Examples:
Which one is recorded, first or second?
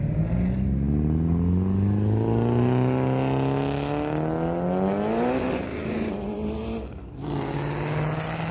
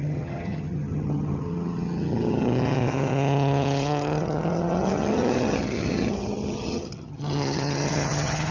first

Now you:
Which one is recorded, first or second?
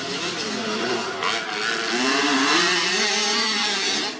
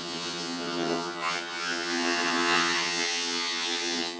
first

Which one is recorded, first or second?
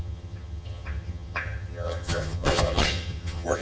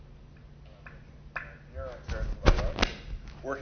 second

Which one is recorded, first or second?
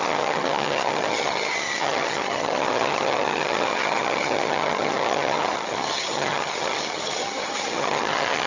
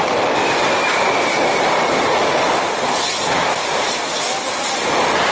second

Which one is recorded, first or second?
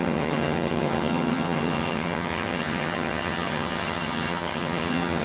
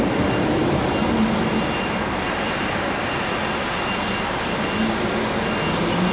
second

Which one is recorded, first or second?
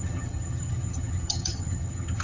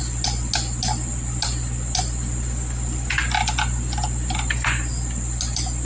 second